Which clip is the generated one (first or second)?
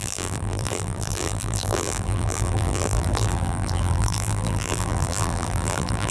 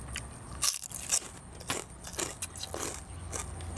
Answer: first